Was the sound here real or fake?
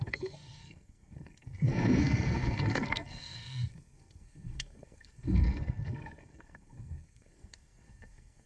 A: fake